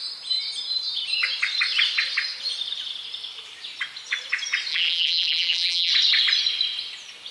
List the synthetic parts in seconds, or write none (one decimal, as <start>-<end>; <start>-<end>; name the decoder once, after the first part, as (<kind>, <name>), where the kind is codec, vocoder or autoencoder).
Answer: 4.7-5.9 (vocoder, BigVGAN v2)